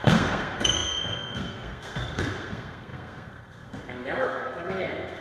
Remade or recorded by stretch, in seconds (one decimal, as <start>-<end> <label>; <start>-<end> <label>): 0.0-5.2 remade